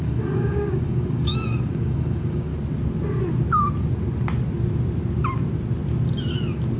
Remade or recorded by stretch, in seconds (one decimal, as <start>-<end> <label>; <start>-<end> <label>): 0.0-2.5 remade; 2.5-6.8 recorded

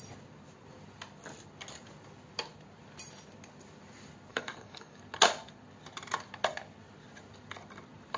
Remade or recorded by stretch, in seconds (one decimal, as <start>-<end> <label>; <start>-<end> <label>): 0.0-4.3 recorded; 4.3-5.0 remade; 5.0-8.2 recorded